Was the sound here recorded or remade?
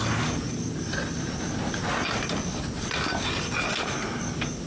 recorded